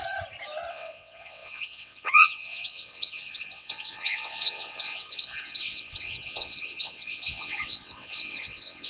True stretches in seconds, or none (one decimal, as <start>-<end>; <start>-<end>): 0.0-0.7